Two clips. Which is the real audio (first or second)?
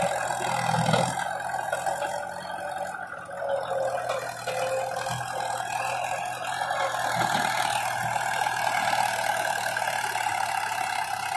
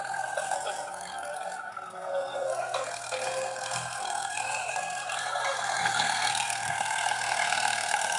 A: first